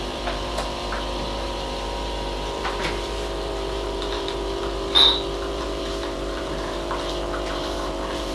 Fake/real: fake